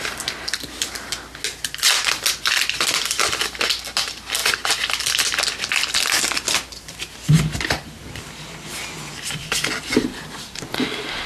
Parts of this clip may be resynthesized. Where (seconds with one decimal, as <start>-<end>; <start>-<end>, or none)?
none